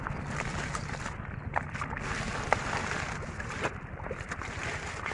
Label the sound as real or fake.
real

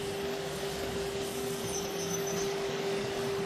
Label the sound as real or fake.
fake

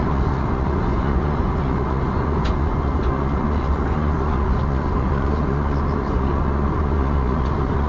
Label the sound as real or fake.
fake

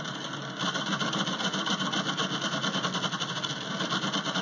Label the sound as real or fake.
real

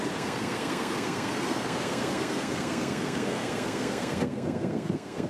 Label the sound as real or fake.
fake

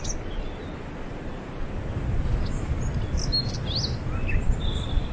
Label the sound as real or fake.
real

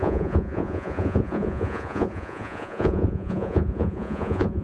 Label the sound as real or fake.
fake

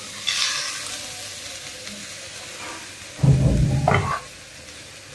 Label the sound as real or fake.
real